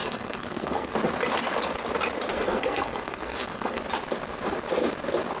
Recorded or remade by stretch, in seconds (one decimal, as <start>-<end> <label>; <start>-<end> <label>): 0.0-0.9 remade; 0.9-2.3 recorded; 2.3-3.8 remade; 3.8-5.4 recorded